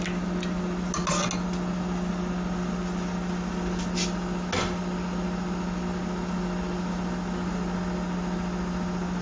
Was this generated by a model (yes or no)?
no